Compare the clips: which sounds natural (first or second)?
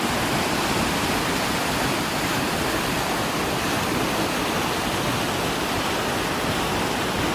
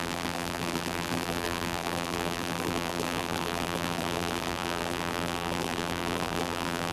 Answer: first